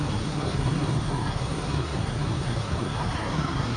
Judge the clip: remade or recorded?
remade